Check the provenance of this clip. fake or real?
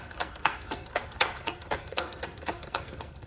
fake